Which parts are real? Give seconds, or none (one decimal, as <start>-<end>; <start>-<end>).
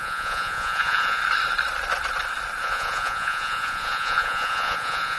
1.2-2.6